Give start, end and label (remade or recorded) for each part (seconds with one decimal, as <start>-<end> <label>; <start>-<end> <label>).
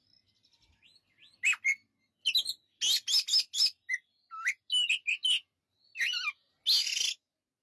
0.0-7.6 recorded